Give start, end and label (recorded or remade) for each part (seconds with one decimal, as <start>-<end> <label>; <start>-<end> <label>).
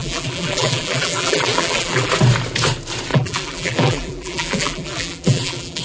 0.0-2.1 remade; 2.1-3.1 recorded; 3.1-5.8 remade